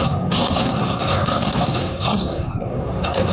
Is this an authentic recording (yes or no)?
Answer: no